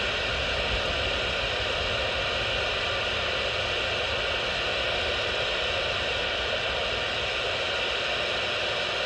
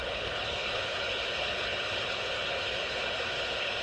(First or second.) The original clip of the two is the first